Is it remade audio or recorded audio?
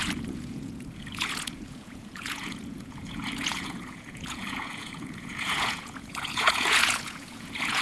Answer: remade